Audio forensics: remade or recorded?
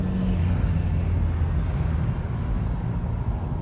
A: recorded